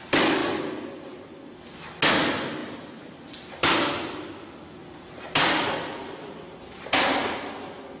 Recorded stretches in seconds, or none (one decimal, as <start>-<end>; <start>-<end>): 0.0-2.6; 3.3-4.8; 7.5-8.0